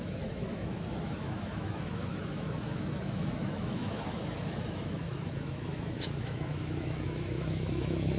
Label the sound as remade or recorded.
remade